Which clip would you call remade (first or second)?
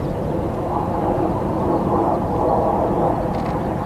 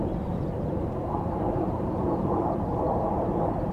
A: second